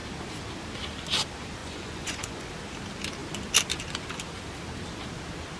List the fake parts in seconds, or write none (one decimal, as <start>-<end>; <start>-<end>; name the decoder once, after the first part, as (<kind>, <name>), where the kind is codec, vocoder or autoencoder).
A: 1.6-2.5 (vocoder, Vocos)